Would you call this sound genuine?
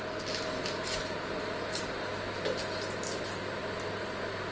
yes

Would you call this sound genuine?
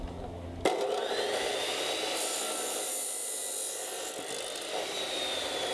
yes